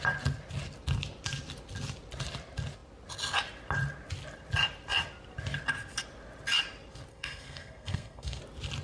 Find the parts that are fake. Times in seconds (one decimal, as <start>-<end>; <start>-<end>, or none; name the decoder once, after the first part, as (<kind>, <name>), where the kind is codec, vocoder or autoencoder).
7.1-8.4 (codec, SNAC)